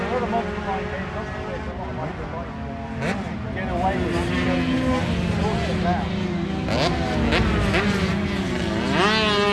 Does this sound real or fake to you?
real